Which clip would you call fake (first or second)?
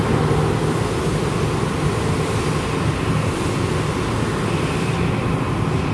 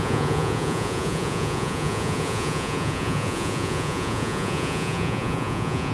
second